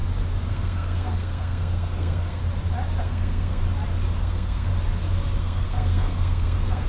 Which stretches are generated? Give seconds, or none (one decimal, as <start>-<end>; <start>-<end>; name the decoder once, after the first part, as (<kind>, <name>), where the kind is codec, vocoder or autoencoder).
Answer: 0.5-2.4 (codec, SNAC); 3.0-3.6; 4.2-4.7; 5.4-6.9